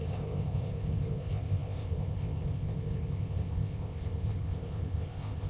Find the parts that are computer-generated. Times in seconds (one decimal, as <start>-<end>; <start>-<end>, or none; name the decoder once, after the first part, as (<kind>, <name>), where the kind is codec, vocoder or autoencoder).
0.0-5.5 (codec, ZipCodec)